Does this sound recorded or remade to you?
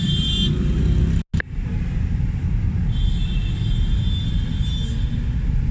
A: recorded